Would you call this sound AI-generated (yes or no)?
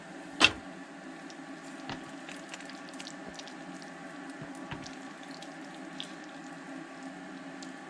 no